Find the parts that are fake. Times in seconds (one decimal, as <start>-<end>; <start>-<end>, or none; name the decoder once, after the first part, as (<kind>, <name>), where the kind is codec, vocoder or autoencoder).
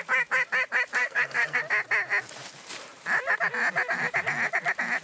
1.0-1.6 (codec, SNAC)